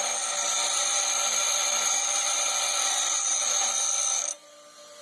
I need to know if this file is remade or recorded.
recorded